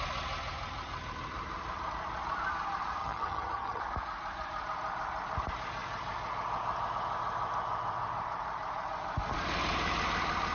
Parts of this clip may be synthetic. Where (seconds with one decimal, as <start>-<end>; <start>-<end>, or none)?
3.0-3.8